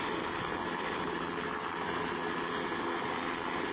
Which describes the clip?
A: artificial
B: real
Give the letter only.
B